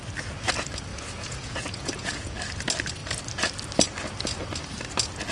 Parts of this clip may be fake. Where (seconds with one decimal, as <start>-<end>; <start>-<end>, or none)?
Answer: 0.9-2.3